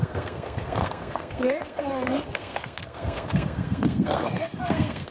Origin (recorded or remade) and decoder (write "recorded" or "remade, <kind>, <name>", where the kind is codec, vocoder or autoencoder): remade, codec, SNAC